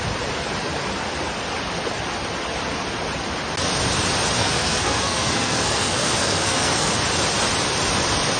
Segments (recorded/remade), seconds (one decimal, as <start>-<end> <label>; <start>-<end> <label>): 0.0-4.4 recorded; 4.4-6.9 remade; 6.9-8.4 recorded